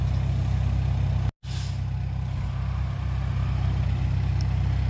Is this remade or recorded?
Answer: recorded